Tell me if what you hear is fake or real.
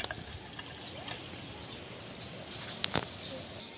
real